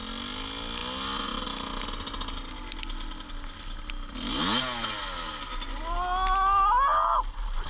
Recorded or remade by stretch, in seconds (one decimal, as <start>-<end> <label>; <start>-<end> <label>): 0.0-7.7 recorded